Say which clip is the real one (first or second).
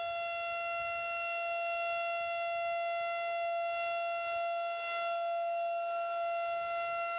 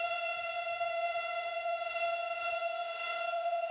first